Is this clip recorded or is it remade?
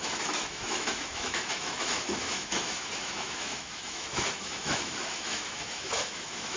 remade